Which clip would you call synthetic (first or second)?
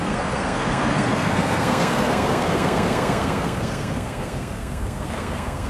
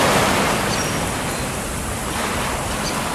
first